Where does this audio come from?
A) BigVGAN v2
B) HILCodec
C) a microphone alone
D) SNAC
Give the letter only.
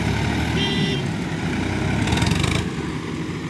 C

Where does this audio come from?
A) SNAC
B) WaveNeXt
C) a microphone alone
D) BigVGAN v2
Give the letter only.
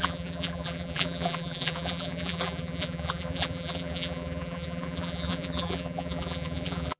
D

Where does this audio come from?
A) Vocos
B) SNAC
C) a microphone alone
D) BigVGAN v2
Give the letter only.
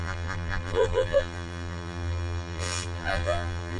D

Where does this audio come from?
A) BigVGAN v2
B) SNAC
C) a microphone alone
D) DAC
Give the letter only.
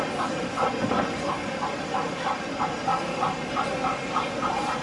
A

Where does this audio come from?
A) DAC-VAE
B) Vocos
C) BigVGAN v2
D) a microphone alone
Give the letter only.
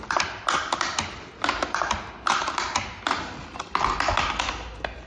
D